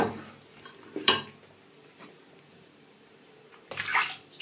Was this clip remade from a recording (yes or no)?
yes